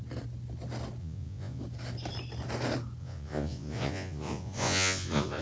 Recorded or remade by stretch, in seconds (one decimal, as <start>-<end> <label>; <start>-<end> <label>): 0.0-1.0 recorded; 1.0-1.6 remade; 1.6-3.0 recorded; 3.0-5.4 remade